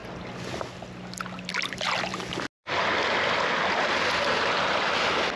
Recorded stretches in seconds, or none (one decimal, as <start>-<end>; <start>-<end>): 0.0-5.4